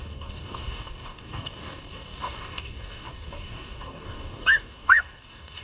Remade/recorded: remade